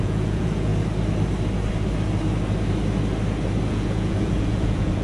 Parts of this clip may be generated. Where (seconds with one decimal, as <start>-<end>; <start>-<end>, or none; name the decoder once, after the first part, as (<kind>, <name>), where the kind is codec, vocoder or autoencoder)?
0.0-0.7 (vocoder, Vocos); 3.7-5.0